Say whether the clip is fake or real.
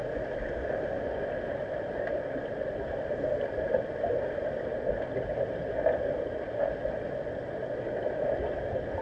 real